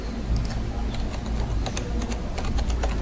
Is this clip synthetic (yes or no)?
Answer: no